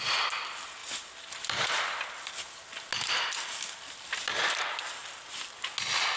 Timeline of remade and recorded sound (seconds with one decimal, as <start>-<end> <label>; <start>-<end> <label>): 0.0-5.0 recorded; 5.0-5.7 remade; 5.7-6.2 recorded